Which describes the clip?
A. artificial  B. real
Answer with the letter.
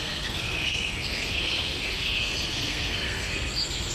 A